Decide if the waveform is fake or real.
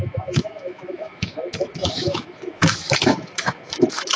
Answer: fake